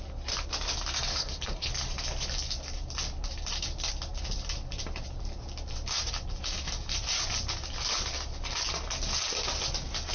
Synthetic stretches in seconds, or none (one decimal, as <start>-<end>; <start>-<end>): 1.1-1.7